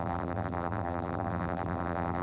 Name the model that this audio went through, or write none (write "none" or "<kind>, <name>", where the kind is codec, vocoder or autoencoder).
vocoder, BigVGAN v2